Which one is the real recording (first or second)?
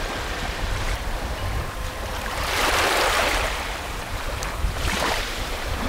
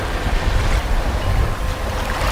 second